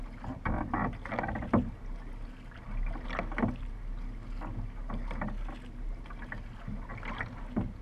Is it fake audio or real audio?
real